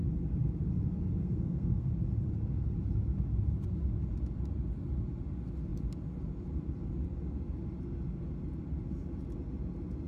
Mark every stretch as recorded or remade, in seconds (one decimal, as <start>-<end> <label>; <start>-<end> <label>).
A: 0.0-1.2 recorded; 1.2-1.9 remade; 1.9-10.1 recorded